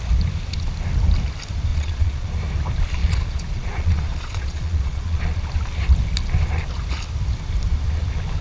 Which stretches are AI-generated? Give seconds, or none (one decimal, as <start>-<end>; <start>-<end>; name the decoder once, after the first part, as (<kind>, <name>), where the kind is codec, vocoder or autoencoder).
1.7-2.3 (vocoder, Vocos); 3.0-5.4